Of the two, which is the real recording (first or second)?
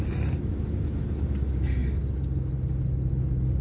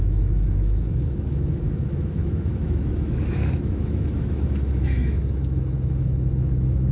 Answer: first